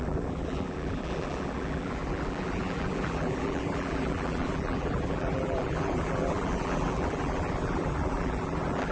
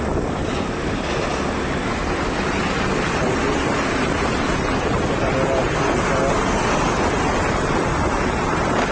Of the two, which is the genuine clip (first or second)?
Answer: second